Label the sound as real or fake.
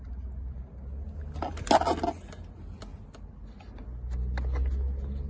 real